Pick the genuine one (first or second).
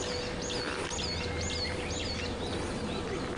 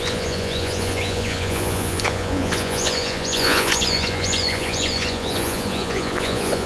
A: first